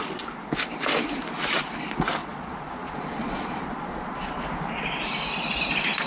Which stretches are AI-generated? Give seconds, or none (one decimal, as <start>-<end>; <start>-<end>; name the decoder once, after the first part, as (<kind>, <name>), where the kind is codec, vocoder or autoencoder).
2.2-4.4 (vocoder, Vocos)